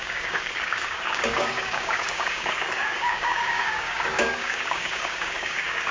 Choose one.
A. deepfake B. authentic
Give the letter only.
A